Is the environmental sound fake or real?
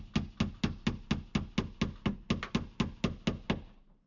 real